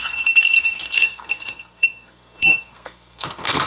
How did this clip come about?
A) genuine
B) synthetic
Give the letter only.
B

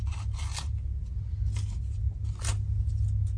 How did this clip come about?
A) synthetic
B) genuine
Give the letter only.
B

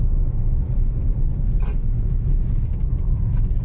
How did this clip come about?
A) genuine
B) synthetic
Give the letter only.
A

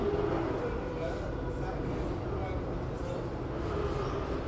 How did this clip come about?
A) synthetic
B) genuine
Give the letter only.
B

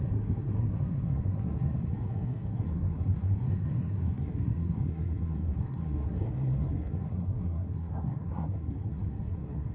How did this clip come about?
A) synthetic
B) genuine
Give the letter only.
A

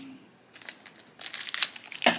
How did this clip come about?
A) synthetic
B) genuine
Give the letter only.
B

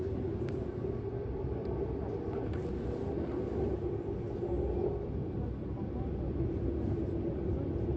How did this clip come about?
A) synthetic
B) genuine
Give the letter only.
B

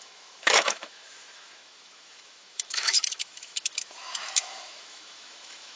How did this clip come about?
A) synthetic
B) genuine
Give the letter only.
A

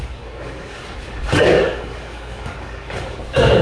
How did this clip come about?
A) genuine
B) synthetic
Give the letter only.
B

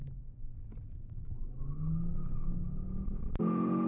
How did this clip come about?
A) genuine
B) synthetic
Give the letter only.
A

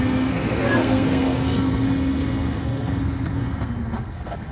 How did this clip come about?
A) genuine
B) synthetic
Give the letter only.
B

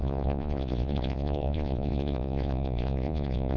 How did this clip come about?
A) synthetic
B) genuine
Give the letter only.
A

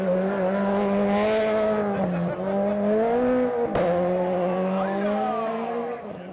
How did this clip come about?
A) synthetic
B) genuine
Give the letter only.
B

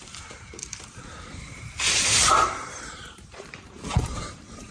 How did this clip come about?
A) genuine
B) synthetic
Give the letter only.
B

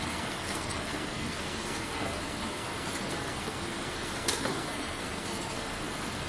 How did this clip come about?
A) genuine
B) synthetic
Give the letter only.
B